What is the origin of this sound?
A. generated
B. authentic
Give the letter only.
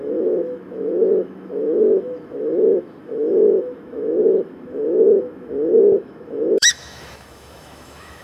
A